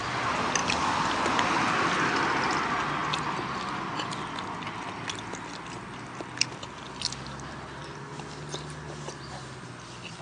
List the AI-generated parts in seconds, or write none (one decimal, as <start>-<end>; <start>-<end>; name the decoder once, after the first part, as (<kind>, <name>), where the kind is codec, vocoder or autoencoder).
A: none